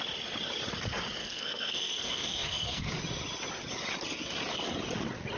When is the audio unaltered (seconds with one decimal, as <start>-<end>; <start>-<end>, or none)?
0.0-1.2; 2.9-5.4